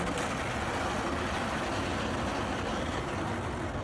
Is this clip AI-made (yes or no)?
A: no